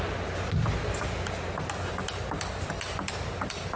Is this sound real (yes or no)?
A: yes